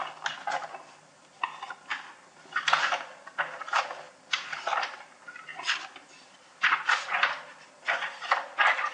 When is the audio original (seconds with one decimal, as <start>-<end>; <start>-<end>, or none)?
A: 0.0-8.9